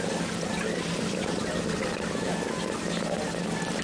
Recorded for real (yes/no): yes